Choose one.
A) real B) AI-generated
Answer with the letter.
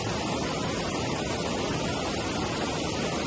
A